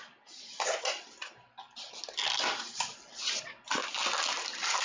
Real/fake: real